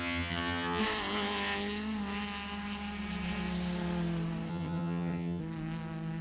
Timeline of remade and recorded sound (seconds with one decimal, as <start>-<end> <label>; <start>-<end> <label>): 0.0-0.8 remade; 0.8-4.5 recorded; 4.5-5.4 remade; 5.4-6.2 recorded